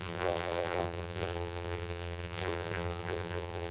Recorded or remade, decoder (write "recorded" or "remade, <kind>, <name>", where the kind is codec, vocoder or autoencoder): remade, vocoder, BigVGAN v2